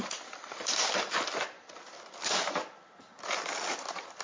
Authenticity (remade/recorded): recorded